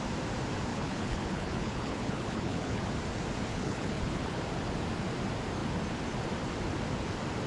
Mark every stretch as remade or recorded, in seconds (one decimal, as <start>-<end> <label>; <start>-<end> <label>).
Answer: 0.0-0.7 recorded; 0.7-2.8 remade; 2.8-3.5 recorded; 3.5-4.4 remade; 4.4-7.5 recorded